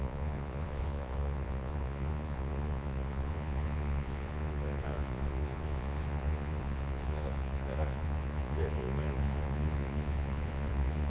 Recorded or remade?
remade